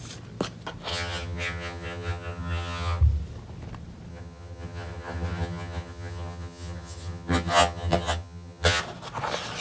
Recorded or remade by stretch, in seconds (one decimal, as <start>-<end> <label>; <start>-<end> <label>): 0.0-0.9 recorded; 0.9-3.0 remade; 3.0-4.1 recorded; 4.1-8.8 remade; 8.8-9.6 recorded